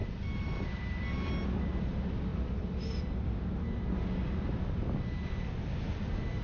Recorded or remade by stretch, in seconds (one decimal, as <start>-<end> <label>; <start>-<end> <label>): 0.0-1.0 remade; 1.0-6.4 recorded